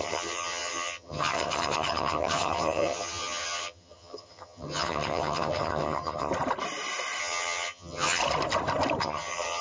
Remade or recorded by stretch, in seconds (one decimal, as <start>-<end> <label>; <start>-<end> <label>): 0.0-6.3 remade; 6.3-7.2 recorded; 7.2-8.2 remade; 8.2-9.0 recorded; 9.0-9.6 remade